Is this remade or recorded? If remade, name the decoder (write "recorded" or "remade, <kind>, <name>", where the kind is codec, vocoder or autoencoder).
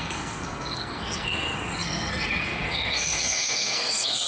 remade, codec, SNAC